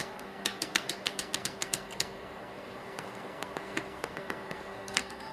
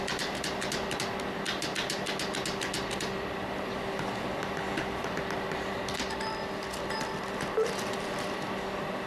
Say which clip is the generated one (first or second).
first